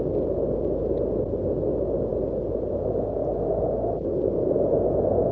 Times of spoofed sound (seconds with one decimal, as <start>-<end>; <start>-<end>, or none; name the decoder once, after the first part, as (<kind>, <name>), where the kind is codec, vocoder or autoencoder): none